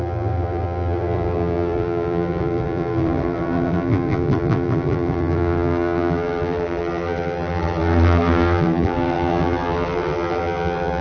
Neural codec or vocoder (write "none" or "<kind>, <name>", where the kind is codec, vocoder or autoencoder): vocoder, BigVGAN v2